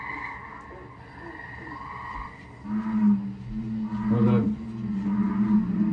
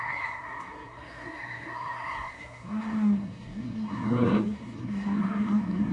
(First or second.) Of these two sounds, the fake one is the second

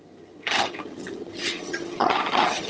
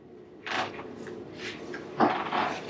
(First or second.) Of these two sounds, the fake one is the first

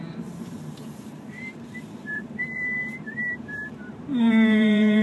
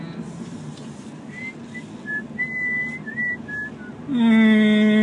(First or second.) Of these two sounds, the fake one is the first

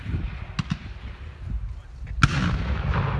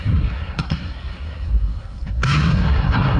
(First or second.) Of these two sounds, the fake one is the second